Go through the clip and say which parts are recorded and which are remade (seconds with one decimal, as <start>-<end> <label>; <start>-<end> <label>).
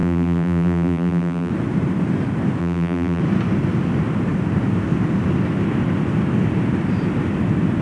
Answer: 0.0-1.5 remade; 1.5-2.6 recorded; 2.6-3.2 remade; 3.2-7.8 recorded